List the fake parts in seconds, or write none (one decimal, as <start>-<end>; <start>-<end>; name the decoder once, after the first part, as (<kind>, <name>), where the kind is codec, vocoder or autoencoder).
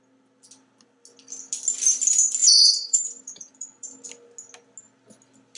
2.4-3.5 (vocoder, Vocos)